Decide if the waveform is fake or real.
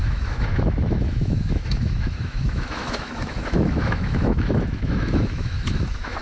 fake